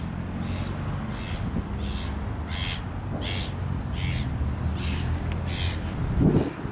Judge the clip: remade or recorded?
recorded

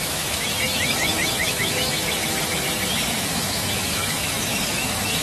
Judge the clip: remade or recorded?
remade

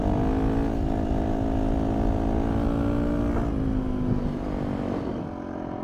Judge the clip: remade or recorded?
recorded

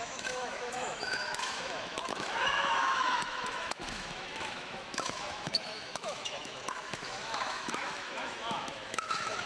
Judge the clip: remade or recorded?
remade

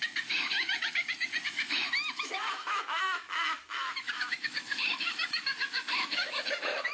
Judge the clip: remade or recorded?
remade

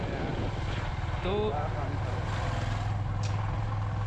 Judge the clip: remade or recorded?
recorded